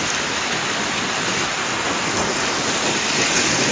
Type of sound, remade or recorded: recorded